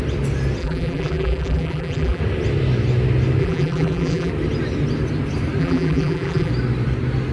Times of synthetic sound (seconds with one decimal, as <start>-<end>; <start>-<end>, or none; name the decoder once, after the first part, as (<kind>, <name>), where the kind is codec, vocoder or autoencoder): 0.6-2.2 (vocoder, BigVGAN v2); 3.4-4.3; 5.6-6.5